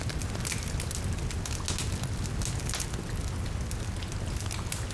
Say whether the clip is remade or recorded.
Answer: recorded